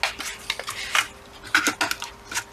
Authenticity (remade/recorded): recorded